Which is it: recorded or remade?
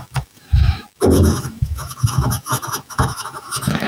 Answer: remade